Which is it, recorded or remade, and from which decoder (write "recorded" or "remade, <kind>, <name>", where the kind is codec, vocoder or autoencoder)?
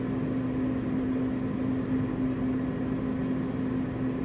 remade, vocoder, BigVGAN v2